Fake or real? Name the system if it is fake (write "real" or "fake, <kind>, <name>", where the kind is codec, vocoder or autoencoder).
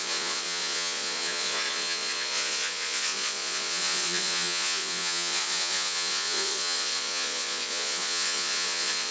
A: fake, vocoder, Vocos